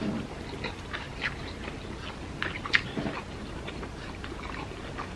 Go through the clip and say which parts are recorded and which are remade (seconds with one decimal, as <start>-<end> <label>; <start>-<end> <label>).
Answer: 0.0-5.2 recorded